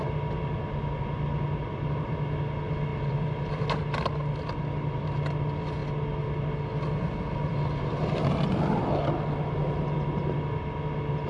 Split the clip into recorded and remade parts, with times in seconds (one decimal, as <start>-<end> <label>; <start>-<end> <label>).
0.0-2.9 recorded; 2.9-3.8 remade; 3.8-11.3 recorded